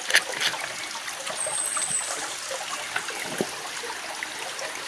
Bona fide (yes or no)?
yes